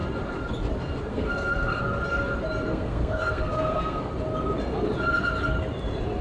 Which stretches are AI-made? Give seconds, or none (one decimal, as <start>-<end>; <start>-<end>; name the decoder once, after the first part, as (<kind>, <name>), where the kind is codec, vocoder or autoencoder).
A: 1.1-1.8 (codec, SNAC); 2.7-4.1